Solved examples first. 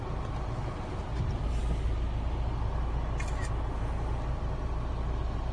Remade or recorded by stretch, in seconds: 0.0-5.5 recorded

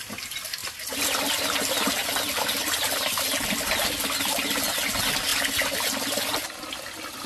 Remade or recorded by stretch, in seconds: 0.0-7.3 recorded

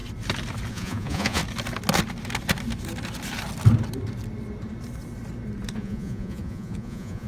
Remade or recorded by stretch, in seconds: 0.0-0.7 recorded; 0.7-1.4 remade; 1.4-5.8 recorded; 5.8-7.3 remade

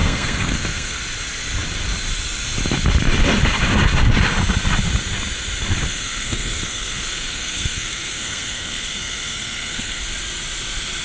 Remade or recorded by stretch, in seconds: 0.0-1.0 remade; 1.0-5.9 recorded; 5.9-10.0 remade; 10.0-11.0 recorded